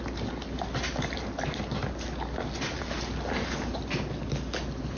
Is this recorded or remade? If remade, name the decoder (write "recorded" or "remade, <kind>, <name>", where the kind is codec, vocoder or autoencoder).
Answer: recorded